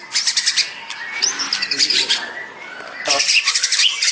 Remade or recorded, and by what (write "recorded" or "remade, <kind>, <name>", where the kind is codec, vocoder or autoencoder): recorded